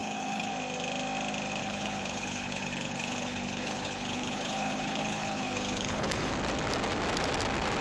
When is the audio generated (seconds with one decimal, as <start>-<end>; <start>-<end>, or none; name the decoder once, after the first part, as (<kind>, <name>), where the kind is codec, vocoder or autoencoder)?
0.0-0.5 (codec, HILCodec); 1.6-6.3